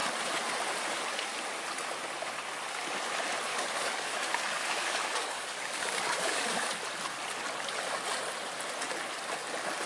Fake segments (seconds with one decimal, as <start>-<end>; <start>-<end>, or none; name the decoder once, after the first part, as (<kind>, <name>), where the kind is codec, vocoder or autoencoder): 3.5-6.7 (codec, DAC)